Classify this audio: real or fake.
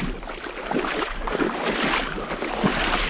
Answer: real